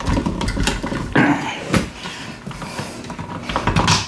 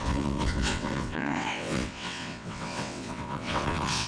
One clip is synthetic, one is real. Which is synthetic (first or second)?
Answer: second